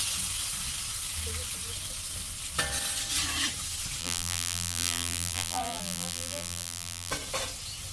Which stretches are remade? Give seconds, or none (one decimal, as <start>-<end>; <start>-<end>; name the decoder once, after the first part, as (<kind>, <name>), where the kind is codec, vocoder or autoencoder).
4.0-7.1 (vocoder, BigVGAN v2)